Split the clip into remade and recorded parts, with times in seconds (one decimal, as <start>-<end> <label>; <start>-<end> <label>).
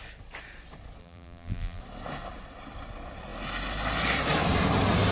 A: 0.0-1.0 recorded; 1.0-1.8 remade; 1.8-5.1 recorded